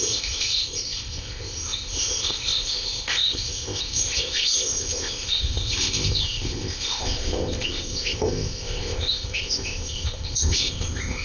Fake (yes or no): yes